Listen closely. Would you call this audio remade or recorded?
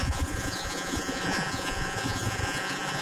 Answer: remade